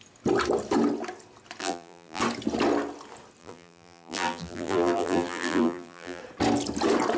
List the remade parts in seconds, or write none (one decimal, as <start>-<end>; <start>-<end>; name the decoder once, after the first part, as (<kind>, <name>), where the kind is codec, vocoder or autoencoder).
1.6-2.2 (vocoder, BigVGAN v2); 3.4-6.2